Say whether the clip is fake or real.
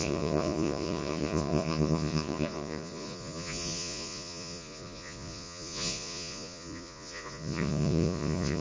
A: fake